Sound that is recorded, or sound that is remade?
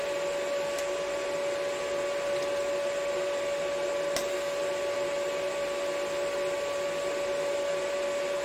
recorded